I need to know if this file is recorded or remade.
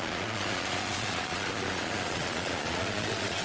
remade